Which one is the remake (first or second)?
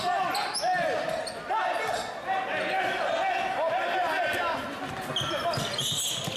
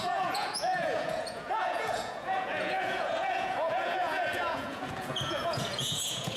second